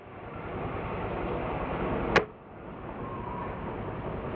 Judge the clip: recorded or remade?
recorded